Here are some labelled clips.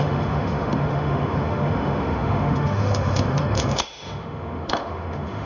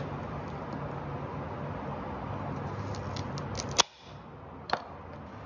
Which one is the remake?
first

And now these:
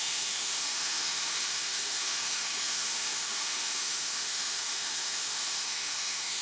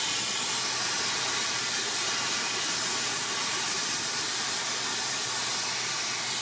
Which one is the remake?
first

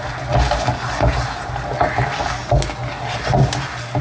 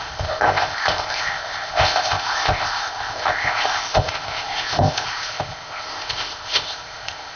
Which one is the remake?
second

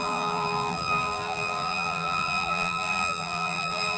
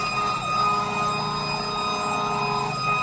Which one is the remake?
first